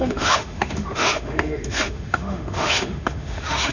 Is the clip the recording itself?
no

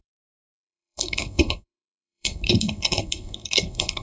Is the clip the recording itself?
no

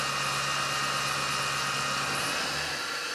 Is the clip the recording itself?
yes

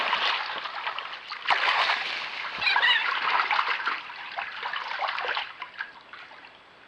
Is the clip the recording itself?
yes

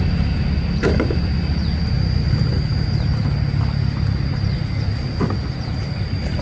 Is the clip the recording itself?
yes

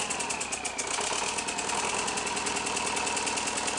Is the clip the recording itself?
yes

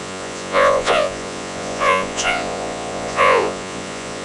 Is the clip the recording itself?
no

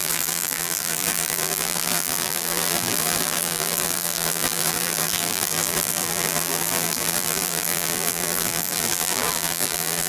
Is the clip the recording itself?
no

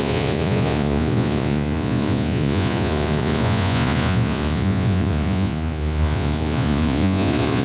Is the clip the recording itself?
no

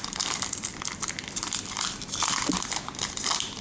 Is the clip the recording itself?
no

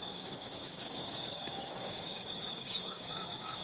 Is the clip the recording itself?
no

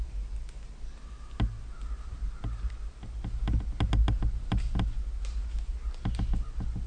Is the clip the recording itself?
yes